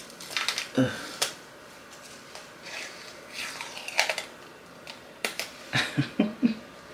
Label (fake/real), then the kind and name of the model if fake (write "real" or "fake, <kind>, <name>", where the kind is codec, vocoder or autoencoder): fake, vocoder, BigVGAN v2